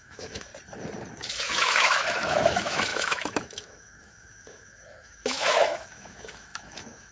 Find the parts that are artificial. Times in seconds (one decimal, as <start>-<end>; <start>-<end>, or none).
0.0-0.5; 1.1-7.1